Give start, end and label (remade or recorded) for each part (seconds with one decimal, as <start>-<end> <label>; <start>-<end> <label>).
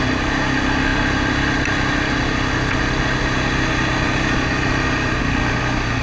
0.0-6.0 recorded